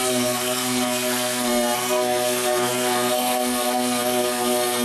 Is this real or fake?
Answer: fake